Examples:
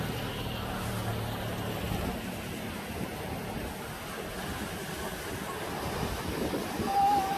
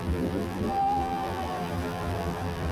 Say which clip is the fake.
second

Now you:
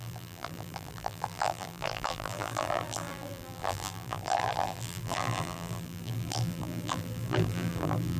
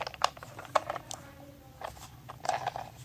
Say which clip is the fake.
first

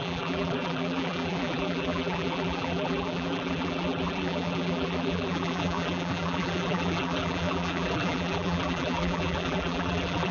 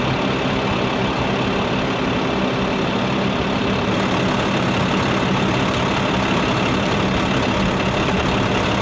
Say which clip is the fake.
first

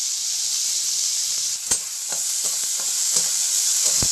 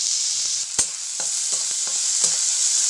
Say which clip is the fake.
first